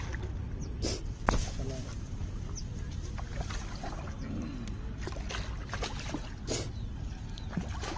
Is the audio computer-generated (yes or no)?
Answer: no